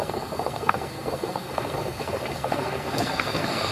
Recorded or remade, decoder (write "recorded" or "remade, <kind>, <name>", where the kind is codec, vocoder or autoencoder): remade, codec, SNAC